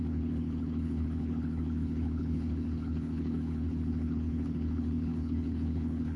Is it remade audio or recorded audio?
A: remade